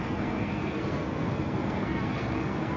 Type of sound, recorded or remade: remade